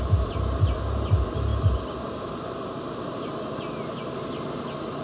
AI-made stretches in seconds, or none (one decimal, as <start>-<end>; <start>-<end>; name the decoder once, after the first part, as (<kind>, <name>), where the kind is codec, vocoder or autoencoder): none